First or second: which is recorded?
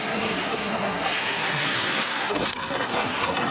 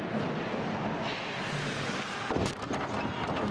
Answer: second